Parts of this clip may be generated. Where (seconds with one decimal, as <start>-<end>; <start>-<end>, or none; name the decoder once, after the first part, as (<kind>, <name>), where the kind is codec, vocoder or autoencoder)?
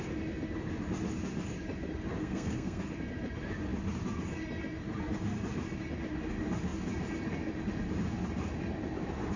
2.2-2.8 (codec, SNAC)